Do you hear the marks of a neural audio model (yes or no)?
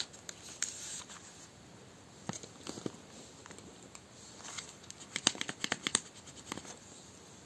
no